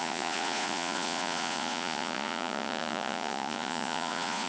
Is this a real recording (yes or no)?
no